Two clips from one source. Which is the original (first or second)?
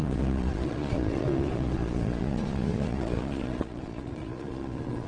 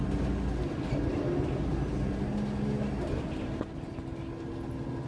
second